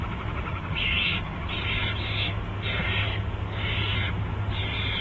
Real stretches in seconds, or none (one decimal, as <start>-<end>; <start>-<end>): 0.0-0.5; 1.4-5.0